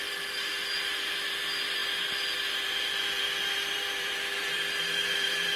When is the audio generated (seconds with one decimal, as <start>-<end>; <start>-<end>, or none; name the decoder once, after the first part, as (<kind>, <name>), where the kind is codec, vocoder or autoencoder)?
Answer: 0.0-5.6 (vocoder, BigVGAN v2)